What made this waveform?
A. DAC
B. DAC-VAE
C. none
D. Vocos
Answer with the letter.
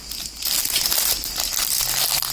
C